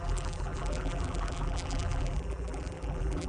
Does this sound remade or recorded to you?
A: remade